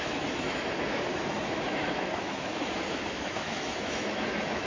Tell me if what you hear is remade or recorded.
remade